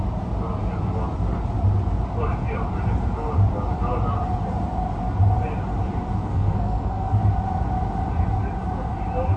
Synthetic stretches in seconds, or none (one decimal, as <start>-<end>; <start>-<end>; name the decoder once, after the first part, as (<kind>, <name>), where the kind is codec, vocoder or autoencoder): 6.2-7.2 (codec, SNAC)